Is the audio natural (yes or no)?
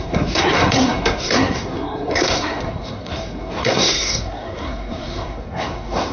no